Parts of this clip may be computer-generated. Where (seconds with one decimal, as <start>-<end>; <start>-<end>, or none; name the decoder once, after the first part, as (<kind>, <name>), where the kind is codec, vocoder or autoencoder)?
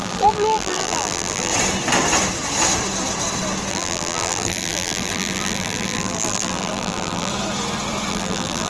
0.0-1.5 (vocoder, BigVGAN v2); 3.7-7.3; 8.1-8.7